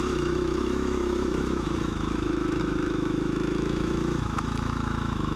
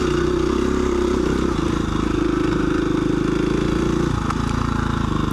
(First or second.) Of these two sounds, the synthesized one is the first